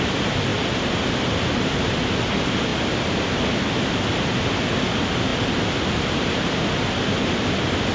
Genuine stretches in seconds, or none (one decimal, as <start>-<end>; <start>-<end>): 0.0-7.9